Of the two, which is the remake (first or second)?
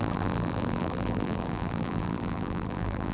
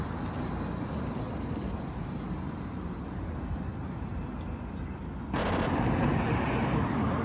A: first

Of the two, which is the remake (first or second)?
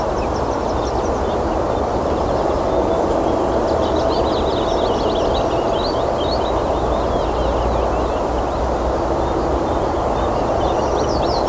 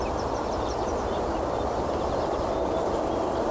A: second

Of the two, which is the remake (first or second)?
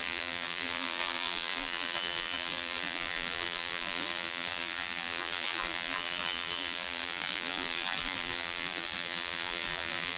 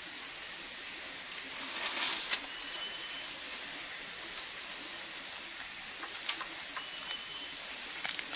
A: first